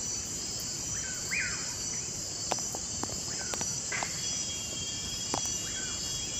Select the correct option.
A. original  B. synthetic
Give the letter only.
B